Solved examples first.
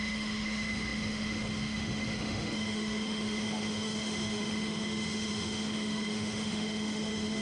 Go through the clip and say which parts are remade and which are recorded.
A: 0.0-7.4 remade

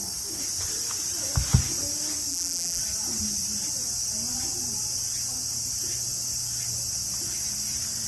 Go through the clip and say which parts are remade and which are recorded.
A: 0.0-2.3 recorded; 2.3-2.8 remade; 2.8-8.1 recorded

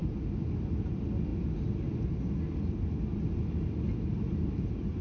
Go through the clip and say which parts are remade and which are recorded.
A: 0.0-5.0 recorded

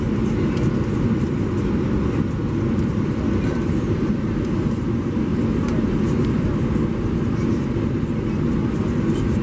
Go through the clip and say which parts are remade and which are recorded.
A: 0.0-9.4 recorded

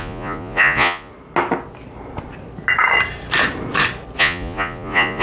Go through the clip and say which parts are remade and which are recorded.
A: 0.0-1.1 remade; 1.1-4.2 recorded; 4.2-5.2 remade

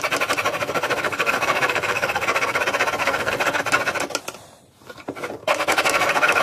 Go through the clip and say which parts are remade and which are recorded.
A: 0.0-0.5 recorded; 0.5-2.6 remade; 2.6-3.0 recorded; 3.0-3.6 remade; 3.6-5.4 recorded; 5.4-6.4 remade

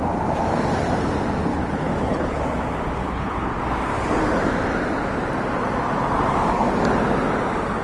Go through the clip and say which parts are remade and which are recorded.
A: 0.0-1.5 recorded; 1.5-2.4 remade; 2.4-3.0 recorded; 3.0-3.5 remade; 3.5-7.8 recorded

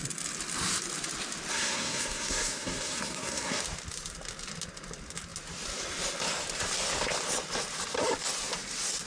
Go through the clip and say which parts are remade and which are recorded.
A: 0.0-1.5 recorded; 1.5-3.6 remade; 3.6-9.1 recorded